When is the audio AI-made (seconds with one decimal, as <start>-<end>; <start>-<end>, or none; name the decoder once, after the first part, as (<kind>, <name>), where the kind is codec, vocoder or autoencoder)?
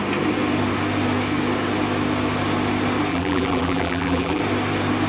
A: 3.1-4.4 (vocoder, BigVGAN v2)